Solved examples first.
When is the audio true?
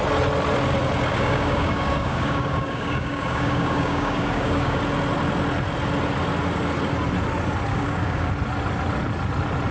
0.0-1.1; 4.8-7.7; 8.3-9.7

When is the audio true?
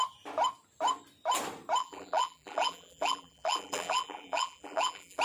0.0-1.8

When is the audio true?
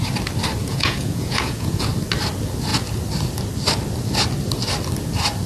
0.0-0.6; 1.9-5.5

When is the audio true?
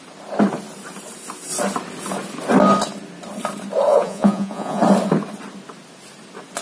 0.0-3.9; 4.8-6.6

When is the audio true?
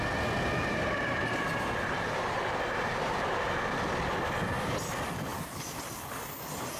0.0-0.7; 4.8-5.3; 5.9-6.8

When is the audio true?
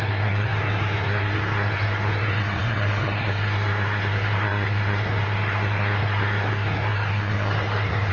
none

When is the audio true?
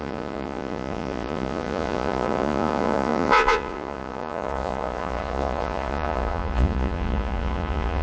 none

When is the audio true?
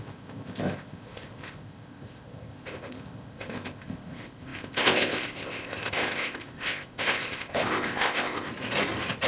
8.5-9.3